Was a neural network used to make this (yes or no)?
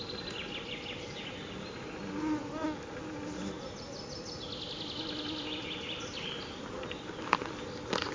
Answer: no